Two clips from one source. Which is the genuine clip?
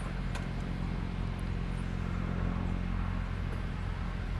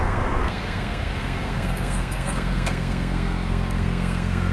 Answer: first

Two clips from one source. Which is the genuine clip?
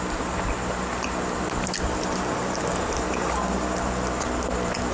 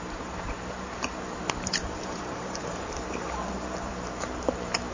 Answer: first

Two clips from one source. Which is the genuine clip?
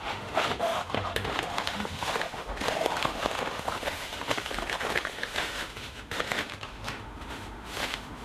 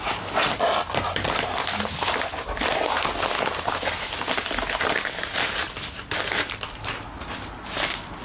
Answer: second